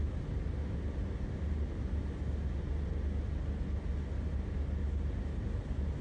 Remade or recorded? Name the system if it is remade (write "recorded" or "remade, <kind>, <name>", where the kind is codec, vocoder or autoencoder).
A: recorded